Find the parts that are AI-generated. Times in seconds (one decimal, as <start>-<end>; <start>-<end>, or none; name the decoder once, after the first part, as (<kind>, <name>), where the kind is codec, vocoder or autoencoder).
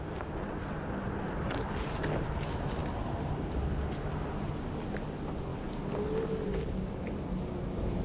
none